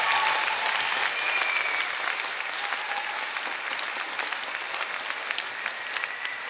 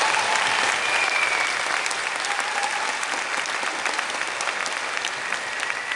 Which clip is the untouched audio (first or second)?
first